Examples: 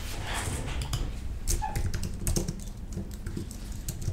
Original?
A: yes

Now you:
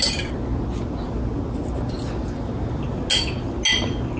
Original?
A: yes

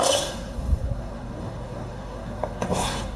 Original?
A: no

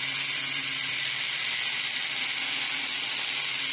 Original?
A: yes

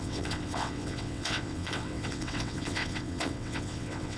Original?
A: no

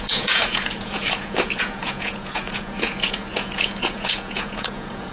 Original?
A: no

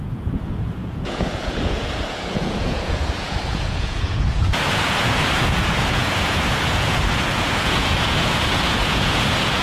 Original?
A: no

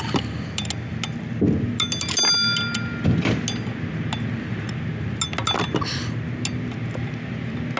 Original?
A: yes